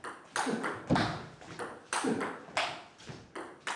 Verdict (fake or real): real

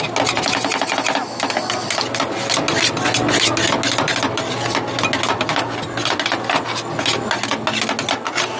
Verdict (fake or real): real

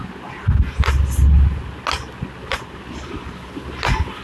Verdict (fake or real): real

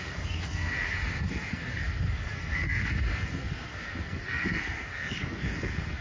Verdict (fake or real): fake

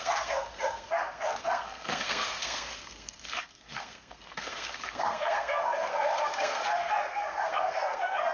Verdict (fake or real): fake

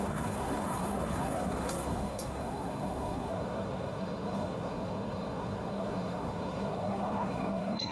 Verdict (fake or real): fake